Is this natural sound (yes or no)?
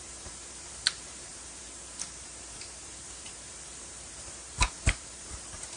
no